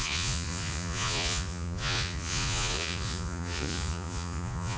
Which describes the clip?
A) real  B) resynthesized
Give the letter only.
B